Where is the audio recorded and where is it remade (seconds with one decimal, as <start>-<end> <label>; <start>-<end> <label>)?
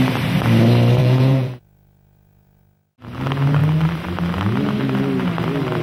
0.0-1.0 recorded; 1.0-2.6 remade; 2.6-5.8 recorded